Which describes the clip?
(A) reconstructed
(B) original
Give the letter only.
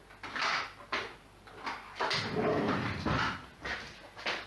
B